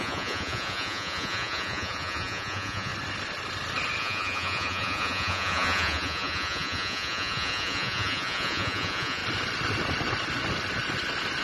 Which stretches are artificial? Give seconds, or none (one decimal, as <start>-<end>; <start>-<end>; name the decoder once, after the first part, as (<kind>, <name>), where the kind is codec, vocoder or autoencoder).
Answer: 0.0-2.9 (vocoder, Vocos); 4.0-9.2